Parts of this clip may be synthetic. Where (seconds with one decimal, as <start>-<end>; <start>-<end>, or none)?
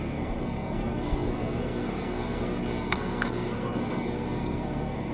0.0-5.1